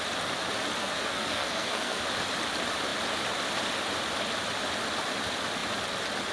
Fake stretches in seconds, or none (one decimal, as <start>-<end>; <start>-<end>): 0.8-2.0